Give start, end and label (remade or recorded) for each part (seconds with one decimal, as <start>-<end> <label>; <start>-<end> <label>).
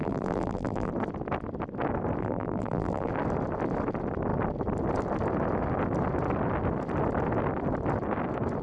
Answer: 0.0-0.9 remade; 0.9-2.2 recorded; 2.2-3.1 remade; 3.1-8.6 recorded